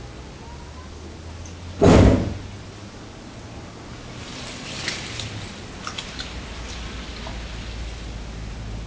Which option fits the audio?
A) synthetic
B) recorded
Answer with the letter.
B